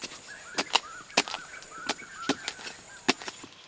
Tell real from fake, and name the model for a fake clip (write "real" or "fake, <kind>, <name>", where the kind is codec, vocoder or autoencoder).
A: real